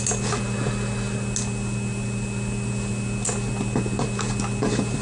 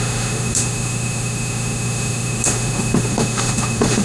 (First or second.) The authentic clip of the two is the first